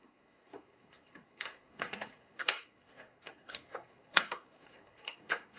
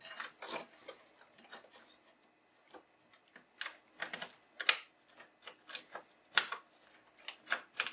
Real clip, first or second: second